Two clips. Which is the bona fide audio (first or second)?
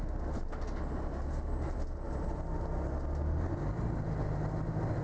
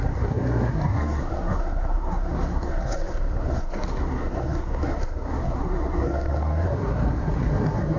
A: first